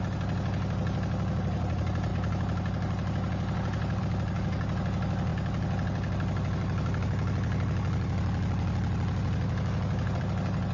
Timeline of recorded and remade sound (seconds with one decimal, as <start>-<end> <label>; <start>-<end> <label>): 0.0-10.7 recorded